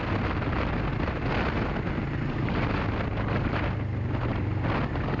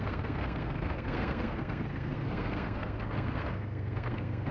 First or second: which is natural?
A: first